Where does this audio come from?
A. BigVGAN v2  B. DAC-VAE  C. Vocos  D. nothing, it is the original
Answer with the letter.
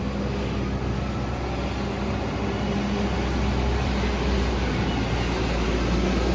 D